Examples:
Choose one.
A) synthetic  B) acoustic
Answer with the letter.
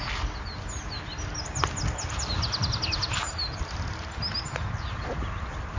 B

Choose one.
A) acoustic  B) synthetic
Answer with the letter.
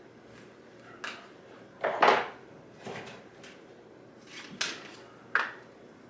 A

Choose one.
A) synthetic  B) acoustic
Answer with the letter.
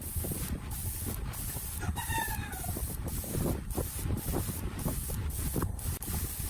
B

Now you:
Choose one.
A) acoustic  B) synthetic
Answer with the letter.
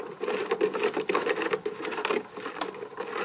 A